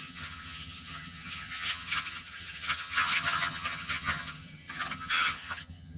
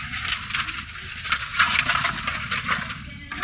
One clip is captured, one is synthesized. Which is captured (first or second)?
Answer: second